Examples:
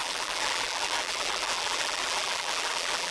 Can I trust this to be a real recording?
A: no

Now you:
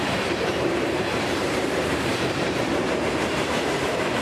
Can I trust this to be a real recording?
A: no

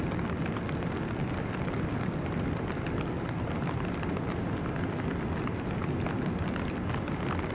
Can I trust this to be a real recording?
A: yes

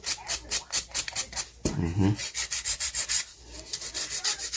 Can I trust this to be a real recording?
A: yes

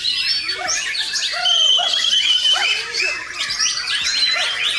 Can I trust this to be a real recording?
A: yes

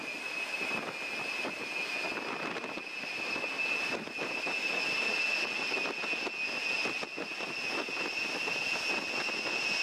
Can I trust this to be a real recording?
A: yes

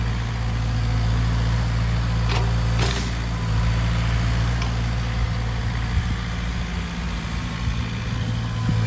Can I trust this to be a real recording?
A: yes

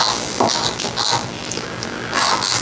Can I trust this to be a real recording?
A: no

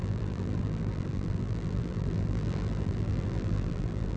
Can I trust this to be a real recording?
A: no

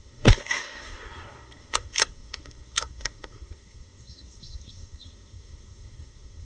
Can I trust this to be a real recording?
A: no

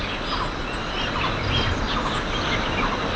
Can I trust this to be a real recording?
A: yes